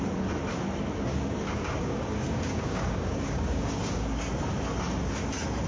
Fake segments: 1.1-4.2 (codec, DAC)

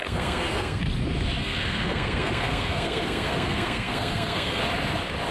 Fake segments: 0.0-0.8 (codec, SNAC); 1.4-4.6

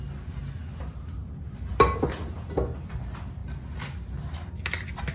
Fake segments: 3.4-4.5 (vocoder, BigVGAN v2)

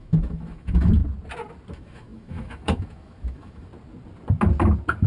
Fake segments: 0.0-1.0 (autoencoder, DAC-VAE); 1.7-3.7

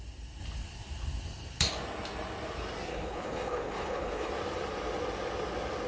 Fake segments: 2.9-4.3 (codec, HILCodec)

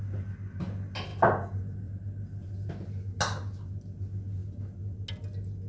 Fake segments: none